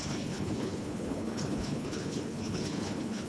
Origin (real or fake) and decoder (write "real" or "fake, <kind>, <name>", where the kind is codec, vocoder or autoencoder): fake, codec, HILCodec